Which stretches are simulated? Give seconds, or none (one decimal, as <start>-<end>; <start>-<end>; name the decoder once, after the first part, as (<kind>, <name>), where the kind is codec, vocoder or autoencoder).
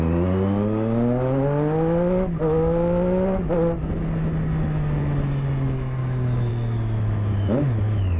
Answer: 6.0-6.5 (autoencoder, DAC-VAE)